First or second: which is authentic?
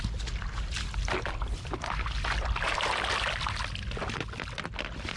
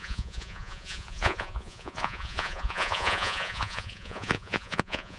first